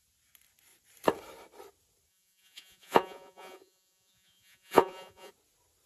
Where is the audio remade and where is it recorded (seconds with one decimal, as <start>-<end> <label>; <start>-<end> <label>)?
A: 0.0-2.1 recorded; 2.1-5.3 remade; 5.3-5.9 recorded